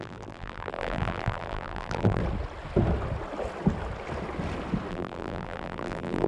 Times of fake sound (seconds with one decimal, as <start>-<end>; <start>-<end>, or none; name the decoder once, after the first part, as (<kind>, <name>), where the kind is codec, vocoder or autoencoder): 0.0-2.2 (vocoder, BigVGAN v2); 4.9-6.3